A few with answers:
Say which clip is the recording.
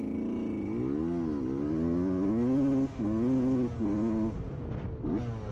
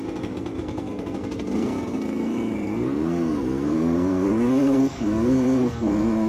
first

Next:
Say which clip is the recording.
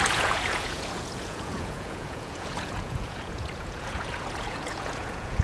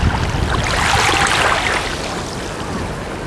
second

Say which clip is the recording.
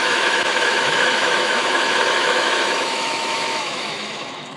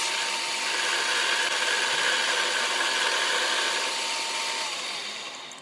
second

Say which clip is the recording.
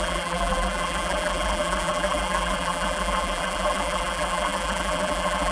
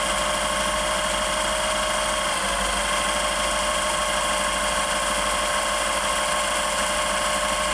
second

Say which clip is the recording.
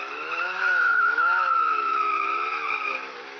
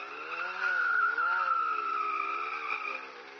second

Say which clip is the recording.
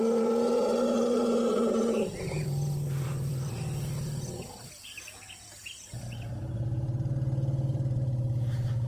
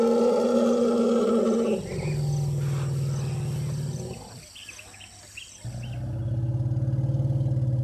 second